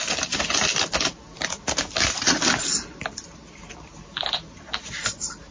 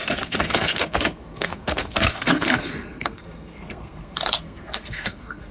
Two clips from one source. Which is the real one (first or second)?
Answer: first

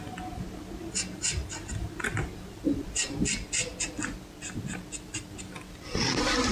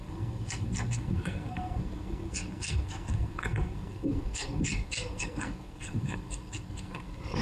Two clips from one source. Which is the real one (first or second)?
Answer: first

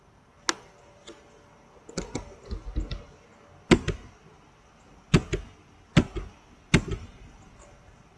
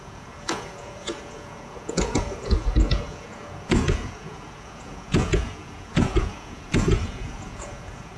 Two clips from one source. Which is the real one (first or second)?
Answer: first